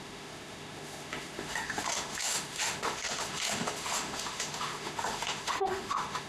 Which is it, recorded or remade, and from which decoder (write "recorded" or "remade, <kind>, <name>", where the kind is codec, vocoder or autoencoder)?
remade, autoencoder, DAC-VAE